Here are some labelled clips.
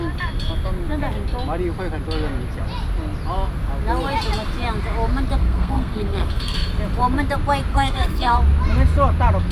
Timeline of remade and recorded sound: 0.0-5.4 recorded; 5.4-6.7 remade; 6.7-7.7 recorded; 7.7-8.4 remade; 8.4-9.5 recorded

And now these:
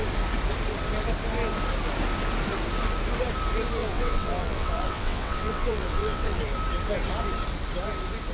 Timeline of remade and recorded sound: 0.0-3.8 recorded; 3.8-6.4 remade; 6.4-8.3 recorded

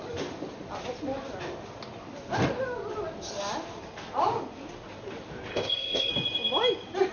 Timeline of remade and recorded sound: 0.0-5.5 recorded; 5.5-6.1 remade; 6.1-7.1 recorded

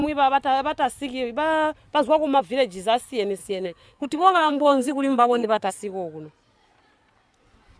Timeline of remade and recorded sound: 0.0-3.4 recorded; 3.4-5.7 remade; 5.7-7.8 recorded